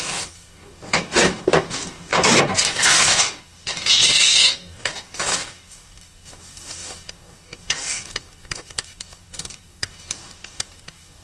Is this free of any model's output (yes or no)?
no